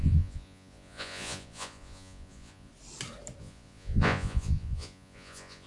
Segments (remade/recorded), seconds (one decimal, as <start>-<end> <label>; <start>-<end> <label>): 0.0-2.7 remade; 2.7-3.4 recorded; 3.4-5.7 remade